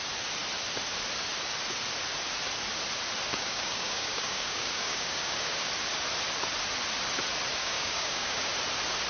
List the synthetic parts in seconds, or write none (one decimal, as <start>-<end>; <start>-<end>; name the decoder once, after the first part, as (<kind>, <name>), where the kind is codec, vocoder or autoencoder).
3.3-5.7 (codec, DAC); 7.6-8.5